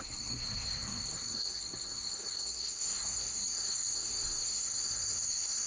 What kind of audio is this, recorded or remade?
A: remade